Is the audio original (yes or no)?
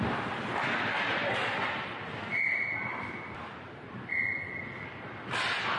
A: yes